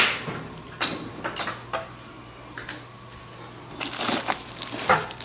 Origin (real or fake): real